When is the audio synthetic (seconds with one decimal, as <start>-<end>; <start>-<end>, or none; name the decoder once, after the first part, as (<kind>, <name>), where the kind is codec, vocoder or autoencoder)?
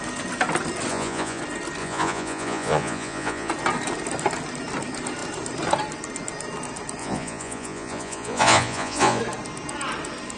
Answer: 0.9-1.4 (vocoder, Vocos); 1.8-3.5; 7.0-9.2